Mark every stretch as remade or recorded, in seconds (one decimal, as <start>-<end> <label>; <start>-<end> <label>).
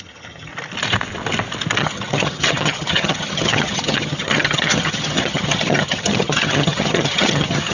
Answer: 0.0-0.5 remade; 0.5-1.8 recorded; 1.8-7.7 remade